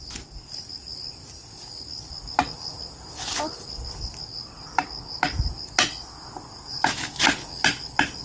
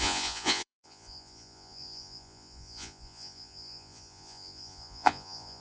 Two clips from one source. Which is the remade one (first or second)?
second